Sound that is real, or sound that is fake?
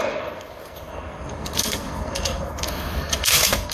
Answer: fake